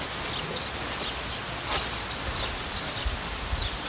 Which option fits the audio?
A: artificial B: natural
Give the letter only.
B